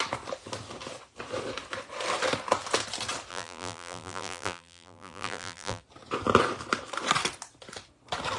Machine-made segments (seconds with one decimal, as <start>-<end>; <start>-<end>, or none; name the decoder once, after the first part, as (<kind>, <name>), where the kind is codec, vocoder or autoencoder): 3.3-5.8 (vocoder, BigVGAN v2)